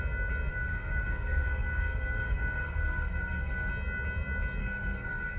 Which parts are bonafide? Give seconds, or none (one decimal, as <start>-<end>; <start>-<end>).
0.0-0.5; 3.7-4.6